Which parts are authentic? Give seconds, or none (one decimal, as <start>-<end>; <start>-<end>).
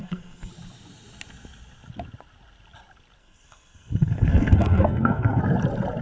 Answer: 0.5-3.2; 5.4-6.0